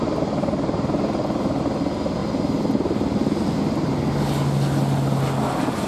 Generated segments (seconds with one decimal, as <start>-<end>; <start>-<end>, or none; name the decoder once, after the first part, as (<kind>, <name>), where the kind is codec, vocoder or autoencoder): none